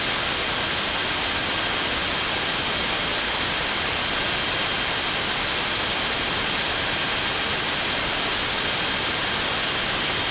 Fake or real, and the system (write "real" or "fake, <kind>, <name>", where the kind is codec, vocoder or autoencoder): real